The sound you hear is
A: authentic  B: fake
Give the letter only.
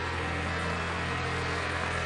B